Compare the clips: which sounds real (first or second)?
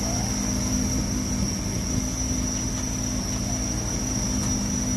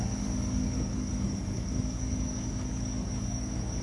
first